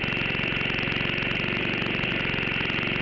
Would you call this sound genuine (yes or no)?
yes